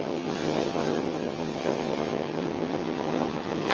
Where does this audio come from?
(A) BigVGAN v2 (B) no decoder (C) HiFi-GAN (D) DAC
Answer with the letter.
C